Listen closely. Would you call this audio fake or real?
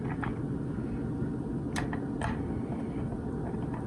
real